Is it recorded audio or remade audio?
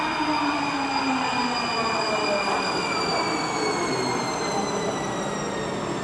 recorded